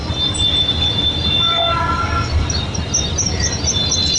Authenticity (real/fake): real